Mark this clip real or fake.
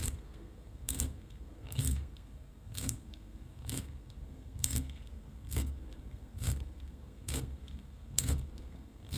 fake